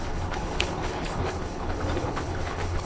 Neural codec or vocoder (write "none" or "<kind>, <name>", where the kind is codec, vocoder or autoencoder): codec, HILCodec